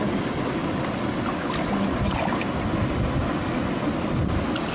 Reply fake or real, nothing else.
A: real